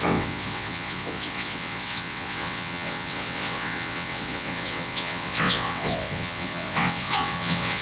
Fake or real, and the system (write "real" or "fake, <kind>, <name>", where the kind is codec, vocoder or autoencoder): fake, vocoder, WaveNeXt